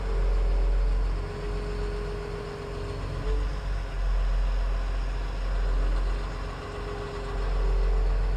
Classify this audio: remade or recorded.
recorded